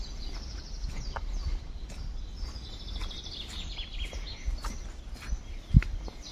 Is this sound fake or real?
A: real